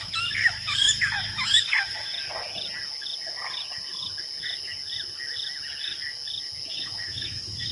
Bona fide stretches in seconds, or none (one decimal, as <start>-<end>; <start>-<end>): 2.1-6.7